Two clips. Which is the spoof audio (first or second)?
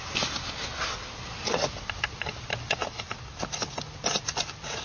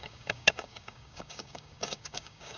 second